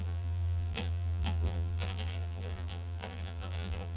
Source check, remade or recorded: remade